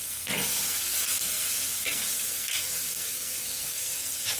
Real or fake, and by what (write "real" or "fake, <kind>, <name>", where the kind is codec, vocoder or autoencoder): fake, codec, SNAC